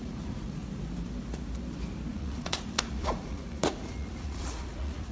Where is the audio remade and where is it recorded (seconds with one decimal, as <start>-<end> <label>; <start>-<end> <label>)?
0.0-0.6 remade; 0.6-2.1 recorded; 2.1-5.1 remade